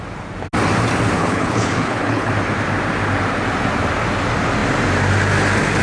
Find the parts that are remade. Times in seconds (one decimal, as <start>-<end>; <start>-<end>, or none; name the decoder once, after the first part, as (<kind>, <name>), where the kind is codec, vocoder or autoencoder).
1.2-2.3 (codec, HILCodec)